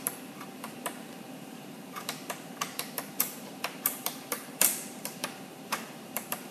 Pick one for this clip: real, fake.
fake